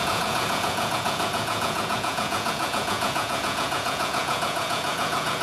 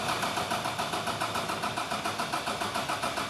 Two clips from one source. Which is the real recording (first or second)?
second